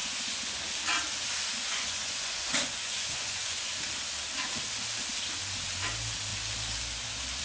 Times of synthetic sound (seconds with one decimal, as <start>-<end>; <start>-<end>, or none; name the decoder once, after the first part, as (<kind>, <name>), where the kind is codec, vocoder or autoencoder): 0.0-0.6 (vocoder, Vocos); 1.5-3.7